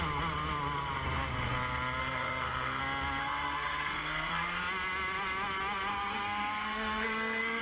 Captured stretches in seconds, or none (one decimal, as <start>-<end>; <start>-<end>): 0.0-2.0; 2.8-3.2; 4.6-5.9